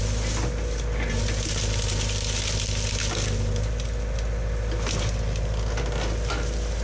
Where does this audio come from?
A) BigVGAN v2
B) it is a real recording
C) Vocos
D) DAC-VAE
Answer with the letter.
B